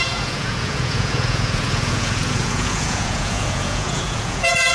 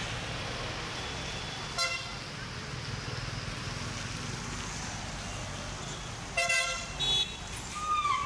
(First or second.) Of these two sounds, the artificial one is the first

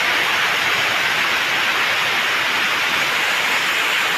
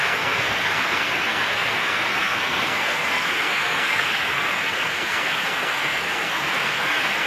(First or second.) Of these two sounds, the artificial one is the second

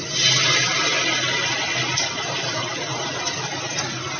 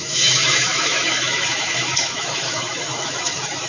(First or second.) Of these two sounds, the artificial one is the second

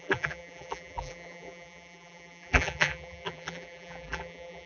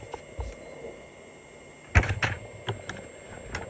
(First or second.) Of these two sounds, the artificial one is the first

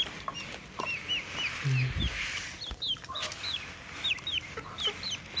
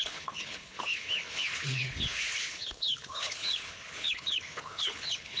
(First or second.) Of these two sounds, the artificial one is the second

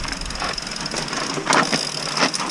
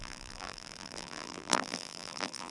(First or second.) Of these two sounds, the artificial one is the second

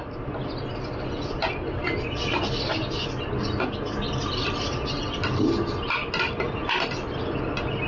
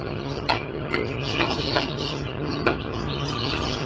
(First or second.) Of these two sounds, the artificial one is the second